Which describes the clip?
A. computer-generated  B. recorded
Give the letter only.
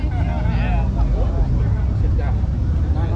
B